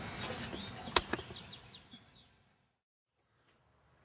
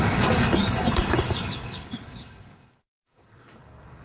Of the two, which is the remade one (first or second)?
second